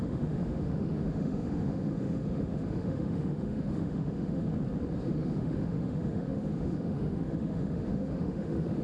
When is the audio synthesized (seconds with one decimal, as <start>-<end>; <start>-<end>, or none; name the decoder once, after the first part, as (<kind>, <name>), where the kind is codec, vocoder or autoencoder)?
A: 0.0-4.5 (autoencoder, DAC-VAE); 5.1-8.8